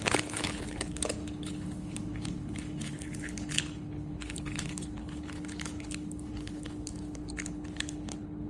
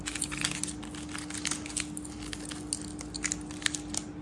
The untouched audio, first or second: second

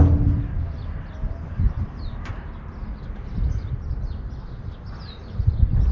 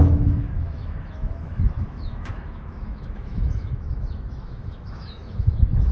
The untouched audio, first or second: first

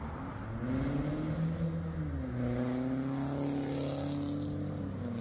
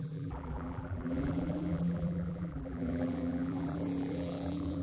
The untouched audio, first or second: first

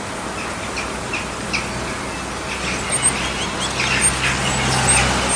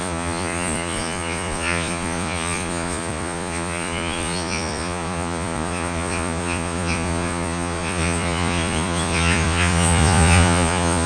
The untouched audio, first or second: first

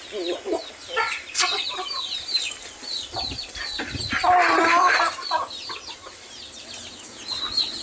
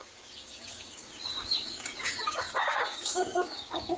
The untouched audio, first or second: first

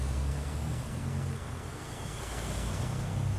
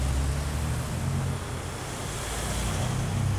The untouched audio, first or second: second